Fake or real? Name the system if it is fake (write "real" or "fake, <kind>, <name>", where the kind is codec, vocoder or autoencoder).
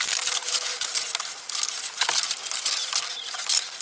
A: real